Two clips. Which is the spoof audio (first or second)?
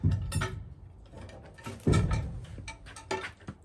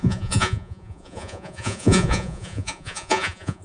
second